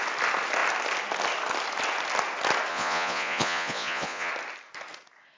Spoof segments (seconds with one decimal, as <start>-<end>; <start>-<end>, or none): 2.7-4.3